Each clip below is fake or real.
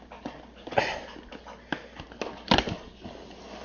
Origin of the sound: real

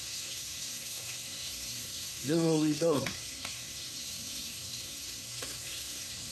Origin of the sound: fake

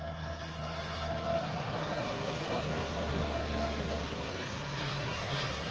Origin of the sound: fake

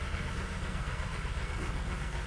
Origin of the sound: fake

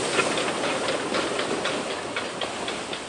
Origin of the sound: real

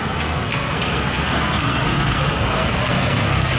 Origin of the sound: fake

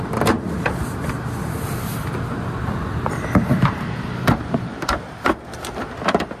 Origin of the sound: real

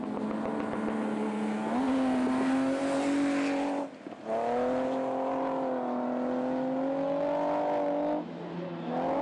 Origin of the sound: real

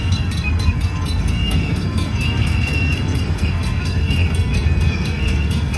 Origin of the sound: fake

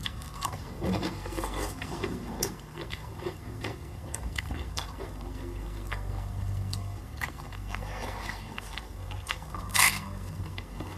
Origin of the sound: fake